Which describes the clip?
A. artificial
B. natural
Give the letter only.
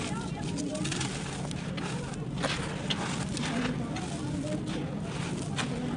B